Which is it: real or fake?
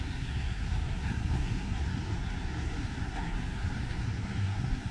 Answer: fake